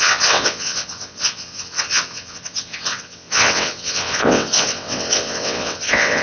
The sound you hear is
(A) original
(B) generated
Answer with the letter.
B